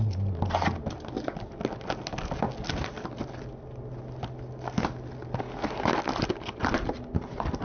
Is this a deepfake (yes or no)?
no